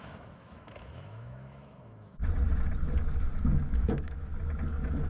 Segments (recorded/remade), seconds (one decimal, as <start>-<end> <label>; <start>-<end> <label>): 0.0-2.2 remade; 2.2-3.7 recorded; 3.7-4.3 remade; 4.3-5.1 recorded